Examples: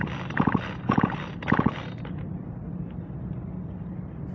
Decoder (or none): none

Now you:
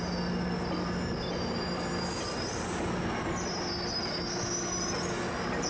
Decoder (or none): none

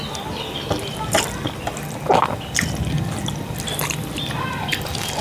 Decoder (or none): none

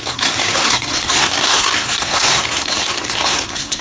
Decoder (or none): codec, SNAC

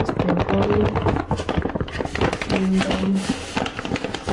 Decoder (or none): none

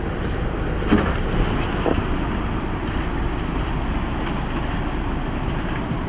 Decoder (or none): none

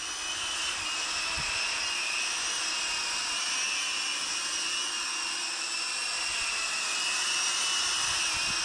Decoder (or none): none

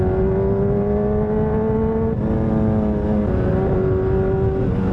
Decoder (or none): none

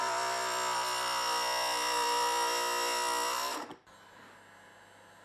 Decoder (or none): vocoder, BigVGAN v2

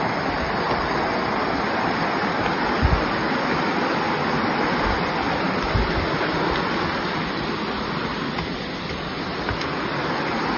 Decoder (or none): none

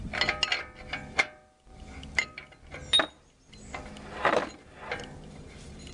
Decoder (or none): none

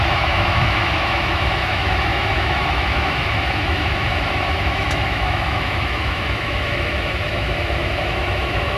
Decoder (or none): autoencoder, DAC-VAE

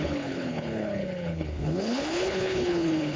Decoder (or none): codec, HILCodec